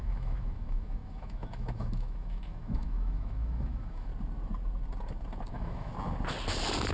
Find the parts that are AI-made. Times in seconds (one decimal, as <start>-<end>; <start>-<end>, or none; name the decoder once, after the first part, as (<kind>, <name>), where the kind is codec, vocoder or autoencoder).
0.0-4.1 (autoencoder, DAC-VAE); 5.5-5.9